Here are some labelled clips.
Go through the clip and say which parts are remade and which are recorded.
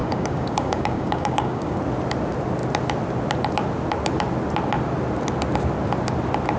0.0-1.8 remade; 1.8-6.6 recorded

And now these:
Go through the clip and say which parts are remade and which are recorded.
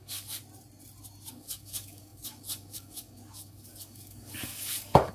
0.0-0.4 remade; 0.4-1.3 recorded; 1.3-5.1 remade